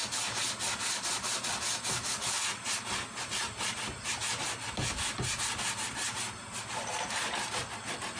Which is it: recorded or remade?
recorded